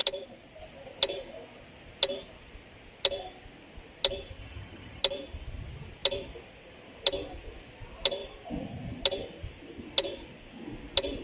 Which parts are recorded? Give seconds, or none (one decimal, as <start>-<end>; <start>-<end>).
0.0-4.4; 5.0-11.2